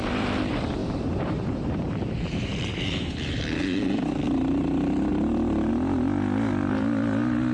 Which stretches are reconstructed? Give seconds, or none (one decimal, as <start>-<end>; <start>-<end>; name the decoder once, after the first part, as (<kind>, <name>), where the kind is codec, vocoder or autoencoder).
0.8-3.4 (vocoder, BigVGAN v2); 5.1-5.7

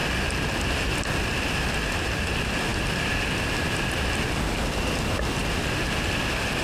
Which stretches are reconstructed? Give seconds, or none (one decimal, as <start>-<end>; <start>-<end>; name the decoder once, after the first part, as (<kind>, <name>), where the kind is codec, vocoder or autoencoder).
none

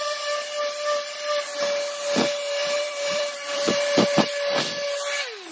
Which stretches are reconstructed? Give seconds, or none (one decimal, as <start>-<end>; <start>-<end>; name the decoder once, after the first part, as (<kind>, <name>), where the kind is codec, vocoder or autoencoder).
2.6-4.0 (vocoder, BigVGAN v2)

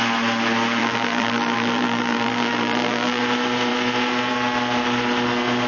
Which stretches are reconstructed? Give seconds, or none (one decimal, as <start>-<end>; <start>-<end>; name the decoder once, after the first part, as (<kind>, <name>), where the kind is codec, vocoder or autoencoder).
0.8-3.2 (vocoder, BigVGAN v2)

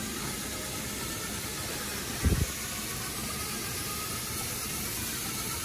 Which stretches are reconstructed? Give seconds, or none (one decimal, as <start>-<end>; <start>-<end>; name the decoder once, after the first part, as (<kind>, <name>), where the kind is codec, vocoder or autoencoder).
0.0-4.6 (vocoder, BigVGAN v2); 5.1-5.6

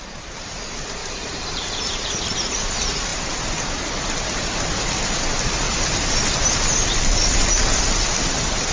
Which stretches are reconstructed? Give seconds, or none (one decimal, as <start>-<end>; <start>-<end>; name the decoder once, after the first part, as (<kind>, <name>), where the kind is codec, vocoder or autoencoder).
1.0-2.3 (vocoder, BigVGAN v2)